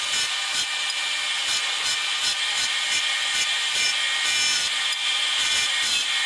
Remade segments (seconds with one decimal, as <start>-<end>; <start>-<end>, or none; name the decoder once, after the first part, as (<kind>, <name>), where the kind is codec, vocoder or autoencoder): 2.3-3.9 (vocoder, BigVGAN v2); 4.5-5.8